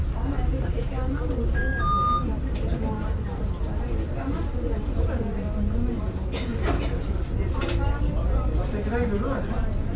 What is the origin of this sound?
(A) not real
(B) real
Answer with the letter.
B